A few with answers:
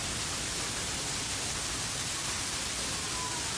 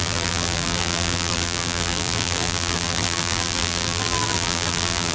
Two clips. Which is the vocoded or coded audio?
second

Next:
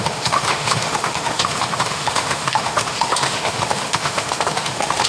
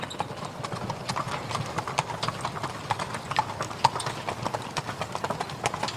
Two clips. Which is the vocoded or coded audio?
first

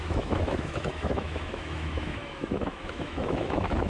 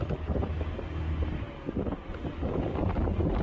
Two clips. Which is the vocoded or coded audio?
first